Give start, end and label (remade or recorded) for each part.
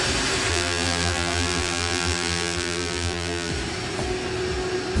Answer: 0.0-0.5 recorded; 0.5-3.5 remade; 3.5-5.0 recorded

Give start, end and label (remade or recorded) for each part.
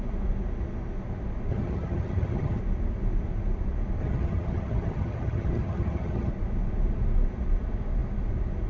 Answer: 0.0-1.5 recorded; 1.5-2.6 remade; 2.6-4.0 recorded; 4.0-6.3 remade; 6.3-8.7 recorded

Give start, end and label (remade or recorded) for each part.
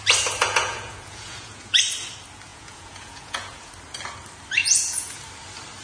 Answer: 0.0-0.4 recorded; 0.4-1.8 remade; 1.8-2.5 recorded; 2.5-3.7 remade; 3.7-4.6 recorded; 4.6-5.2 remade; 5.2-5.8 recorded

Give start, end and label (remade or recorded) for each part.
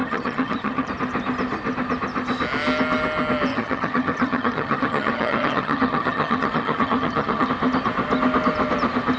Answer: 0.0-0.9 remade; 0.9-3.5 recorded; 3.5-7.5 remade; 7.5-9.2 recorded